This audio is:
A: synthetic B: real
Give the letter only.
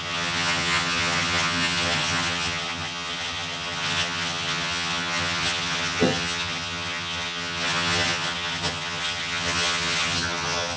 A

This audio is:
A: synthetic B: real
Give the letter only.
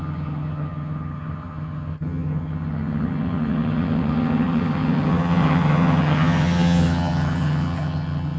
A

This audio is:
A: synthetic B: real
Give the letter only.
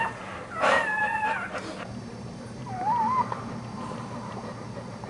A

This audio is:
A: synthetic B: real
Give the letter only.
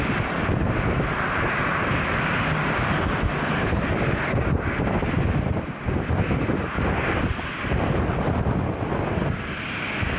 B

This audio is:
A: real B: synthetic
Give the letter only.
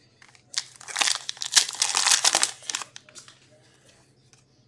A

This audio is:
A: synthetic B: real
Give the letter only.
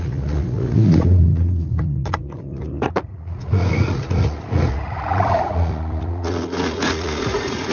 A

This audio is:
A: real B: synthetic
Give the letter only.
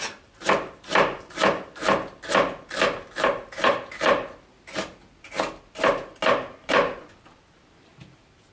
A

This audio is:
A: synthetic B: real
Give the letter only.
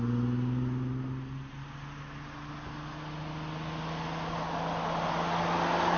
B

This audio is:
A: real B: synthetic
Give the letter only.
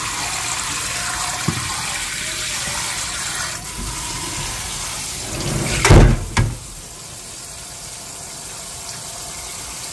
A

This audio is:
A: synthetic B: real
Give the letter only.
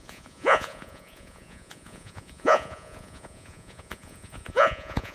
A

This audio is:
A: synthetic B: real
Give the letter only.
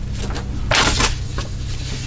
B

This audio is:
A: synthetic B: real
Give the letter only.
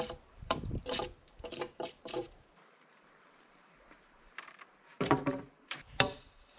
A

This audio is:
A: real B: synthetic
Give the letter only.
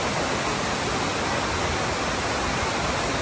A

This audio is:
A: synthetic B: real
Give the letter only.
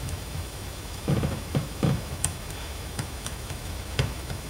A